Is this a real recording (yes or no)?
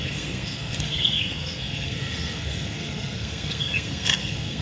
no